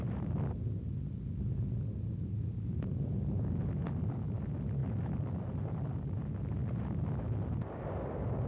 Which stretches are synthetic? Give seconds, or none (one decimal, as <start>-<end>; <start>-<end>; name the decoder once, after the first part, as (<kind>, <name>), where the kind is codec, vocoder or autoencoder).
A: none